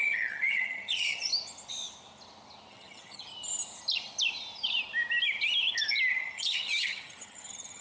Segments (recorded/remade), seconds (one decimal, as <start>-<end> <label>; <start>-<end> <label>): 0.0-1.3 remade; 1.3-2.7 recorded; 2.7-3.3 remade; 3.3-6.1 recorded; 6.1-7.8 remade